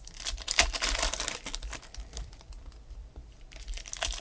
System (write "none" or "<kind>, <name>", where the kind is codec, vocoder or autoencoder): vocoder, BigVGAN v2